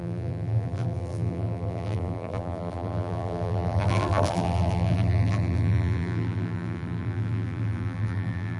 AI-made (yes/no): yes